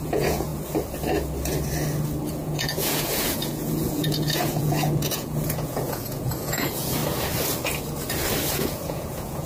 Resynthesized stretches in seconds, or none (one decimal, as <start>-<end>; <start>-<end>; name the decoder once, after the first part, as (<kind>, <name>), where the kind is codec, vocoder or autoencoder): 0.0-0.5 (vocoder, Vocos); 2.3-7.0; 8.5-9.5

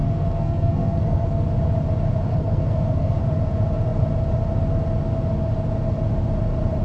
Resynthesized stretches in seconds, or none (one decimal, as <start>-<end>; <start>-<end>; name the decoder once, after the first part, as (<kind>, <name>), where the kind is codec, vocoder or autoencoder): 0.0-1.5 (codec, SNAC); 2.3-3.2

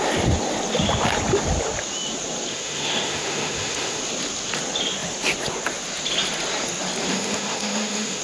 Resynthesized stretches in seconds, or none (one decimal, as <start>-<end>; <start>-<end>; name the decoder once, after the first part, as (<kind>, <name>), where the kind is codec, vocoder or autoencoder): 2.5-4.0 (autoencoder, DAC-VAE); 7.1-8.2

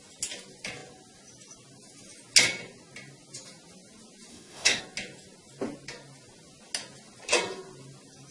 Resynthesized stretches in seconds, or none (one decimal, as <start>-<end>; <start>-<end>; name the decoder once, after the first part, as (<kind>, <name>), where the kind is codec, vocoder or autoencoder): 4.3-4.8 (autoencoder, DAC-VAE)